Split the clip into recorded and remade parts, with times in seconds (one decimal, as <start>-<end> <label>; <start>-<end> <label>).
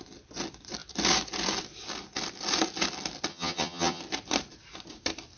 0.0-3.3 recorded; 3.3-4.0 remade; 4.0-5.4 recorded